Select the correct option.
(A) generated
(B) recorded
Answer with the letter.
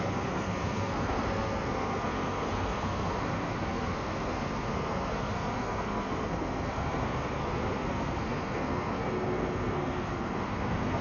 A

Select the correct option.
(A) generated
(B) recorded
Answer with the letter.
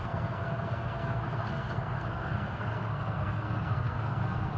A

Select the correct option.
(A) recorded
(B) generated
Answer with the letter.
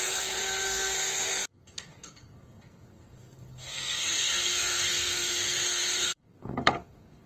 B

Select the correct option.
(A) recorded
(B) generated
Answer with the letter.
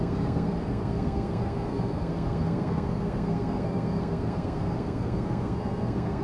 B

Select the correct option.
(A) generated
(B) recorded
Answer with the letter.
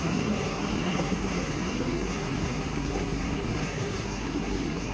A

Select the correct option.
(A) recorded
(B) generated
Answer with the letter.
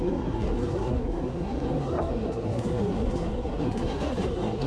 B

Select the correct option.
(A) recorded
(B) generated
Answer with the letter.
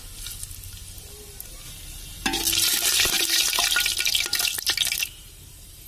A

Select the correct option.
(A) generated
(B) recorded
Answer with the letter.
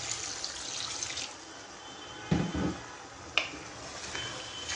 B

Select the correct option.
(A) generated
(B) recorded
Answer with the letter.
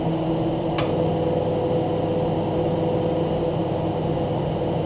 B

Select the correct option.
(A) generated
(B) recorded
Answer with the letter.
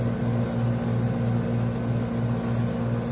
B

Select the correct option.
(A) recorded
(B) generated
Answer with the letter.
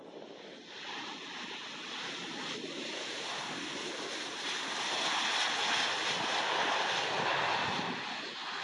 A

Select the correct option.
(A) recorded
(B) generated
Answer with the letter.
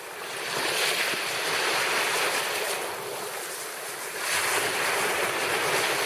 A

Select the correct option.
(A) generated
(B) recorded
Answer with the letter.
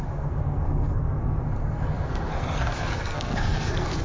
A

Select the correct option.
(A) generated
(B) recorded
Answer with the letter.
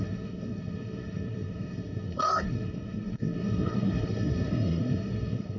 A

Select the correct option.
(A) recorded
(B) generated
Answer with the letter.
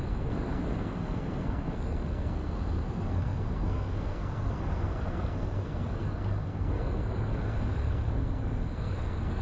B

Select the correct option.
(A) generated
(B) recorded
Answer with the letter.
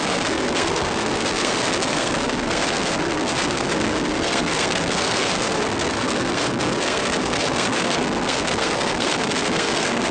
A